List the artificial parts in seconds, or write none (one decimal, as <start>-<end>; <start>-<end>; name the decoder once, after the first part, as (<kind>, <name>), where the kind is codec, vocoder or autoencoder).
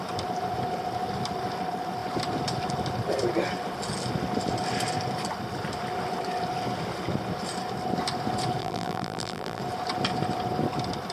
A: 8.6-9.6 (vocoder, BigVGAN v2)